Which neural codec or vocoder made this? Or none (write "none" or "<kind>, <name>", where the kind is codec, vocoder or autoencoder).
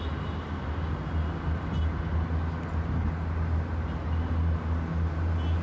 none